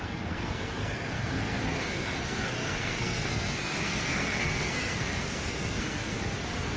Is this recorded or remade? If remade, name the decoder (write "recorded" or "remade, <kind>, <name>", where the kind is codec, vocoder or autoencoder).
remade, codec, SNAC